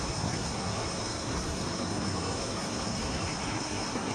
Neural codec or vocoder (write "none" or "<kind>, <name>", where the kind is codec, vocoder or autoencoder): codec, SNAC